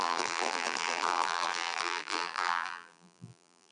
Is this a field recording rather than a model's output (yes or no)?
no